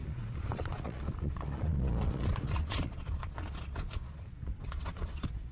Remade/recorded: remade